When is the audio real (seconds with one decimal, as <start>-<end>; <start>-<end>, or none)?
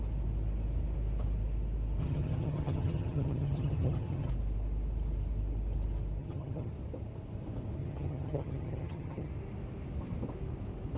0.0-2.0; 4.3-6.2; 6.7-7.8; 9.3-11.0